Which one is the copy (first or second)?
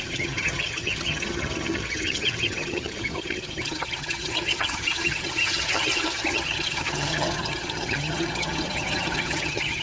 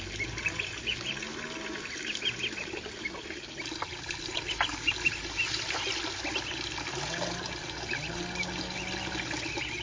first